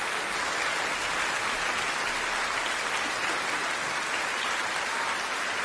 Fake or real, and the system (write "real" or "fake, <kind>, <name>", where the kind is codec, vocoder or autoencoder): real